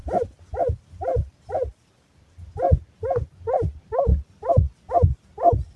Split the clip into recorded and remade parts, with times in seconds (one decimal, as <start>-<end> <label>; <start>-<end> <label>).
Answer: 0.0-5.8 recorded